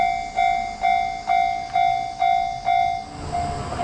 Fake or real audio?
real